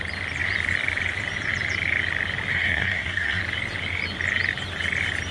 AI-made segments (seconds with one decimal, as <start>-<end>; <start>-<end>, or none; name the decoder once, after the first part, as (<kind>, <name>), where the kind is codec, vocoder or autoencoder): 2.5-3.4 (codec, SNAC)